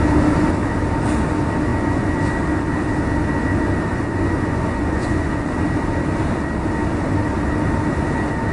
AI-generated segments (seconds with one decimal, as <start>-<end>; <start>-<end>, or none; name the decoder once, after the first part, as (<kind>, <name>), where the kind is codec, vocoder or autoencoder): 1.7-2.2 (vocoder, Vocos); 3.9-5.6